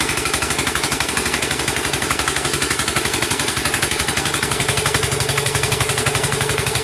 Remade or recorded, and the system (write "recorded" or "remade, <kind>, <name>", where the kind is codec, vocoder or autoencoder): remade, codec, SNAC